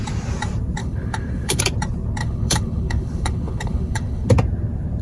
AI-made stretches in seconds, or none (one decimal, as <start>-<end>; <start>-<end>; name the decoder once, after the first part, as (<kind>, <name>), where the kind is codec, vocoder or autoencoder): 0.8-1.6 (codec, HILCodec); 2.2-4.3